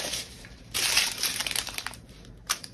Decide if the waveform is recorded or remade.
remade